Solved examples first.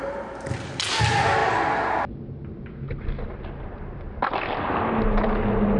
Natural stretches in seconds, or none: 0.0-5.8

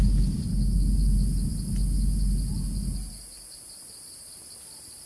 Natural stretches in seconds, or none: 0.0-5.1

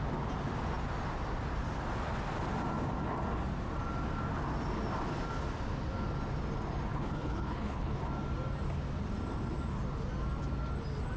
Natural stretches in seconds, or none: 0.0-6.9; 8.0-11.2

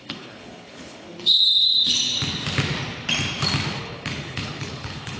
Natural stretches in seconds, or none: 1.4-3.8

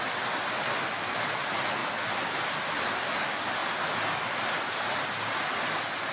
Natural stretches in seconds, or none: 0.0-6.1